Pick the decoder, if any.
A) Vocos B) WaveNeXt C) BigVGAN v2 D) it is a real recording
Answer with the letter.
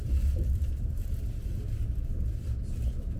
C